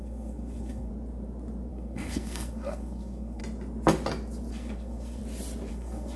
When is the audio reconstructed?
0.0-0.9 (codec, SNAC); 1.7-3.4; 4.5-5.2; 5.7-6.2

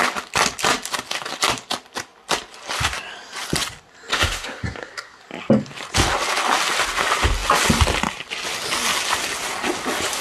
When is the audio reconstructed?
4.1-5.2 (codec, SNAC)

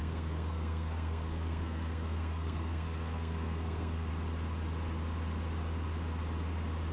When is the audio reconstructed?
0.0-4.1 (codec, SNAC)